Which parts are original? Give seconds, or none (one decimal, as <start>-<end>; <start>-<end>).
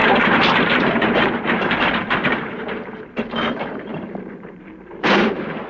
none